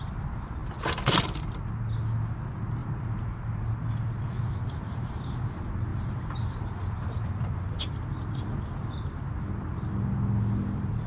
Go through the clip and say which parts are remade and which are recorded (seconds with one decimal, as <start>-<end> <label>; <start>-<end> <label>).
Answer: 0.0-2.8 recorded; 2.8-5.5 remade; 5.5-5.9 recorded; 5.9-7.8 remade; 7.8-11.1 recorded